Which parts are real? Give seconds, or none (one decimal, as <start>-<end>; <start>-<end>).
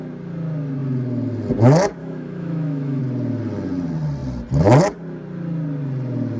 0.0-2.0; 3.0-6.4